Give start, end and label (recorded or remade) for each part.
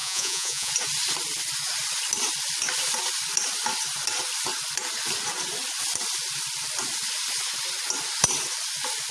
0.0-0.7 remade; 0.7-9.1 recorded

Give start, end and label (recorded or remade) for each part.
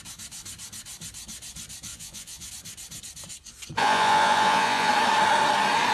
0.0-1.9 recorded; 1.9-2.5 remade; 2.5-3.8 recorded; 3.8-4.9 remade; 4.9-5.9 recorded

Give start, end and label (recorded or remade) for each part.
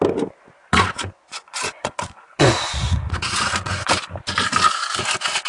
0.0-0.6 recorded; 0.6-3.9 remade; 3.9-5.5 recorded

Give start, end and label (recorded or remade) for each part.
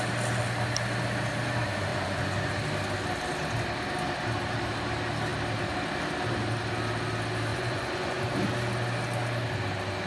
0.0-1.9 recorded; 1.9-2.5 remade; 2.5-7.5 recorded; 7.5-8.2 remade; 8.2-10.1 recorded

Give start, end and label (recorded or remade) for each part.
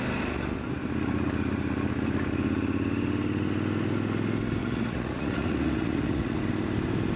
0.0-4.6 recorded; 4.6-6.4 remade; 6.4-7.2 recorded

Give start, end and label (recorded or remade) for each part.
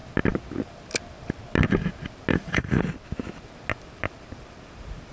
0.0-2.3 recorded; 2.3-2.8 remade; 2.8-5.1 recorded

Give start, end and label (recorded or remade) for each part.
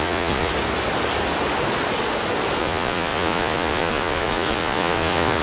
0.0-0.5 remade; 0.5-2.6 recorded; 2.6-5.4 remade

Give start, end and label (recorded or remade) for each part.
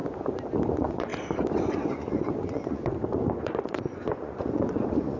0.0-0.7 recorded; 0.7-1.1 remade; 1.1-1.6 recorded; 1.6-5.2 remade